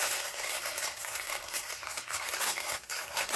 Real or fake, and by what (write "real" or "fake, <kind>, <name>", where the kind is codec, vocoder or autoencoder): fake, codec, SNAC